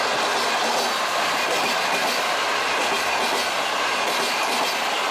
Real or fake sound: real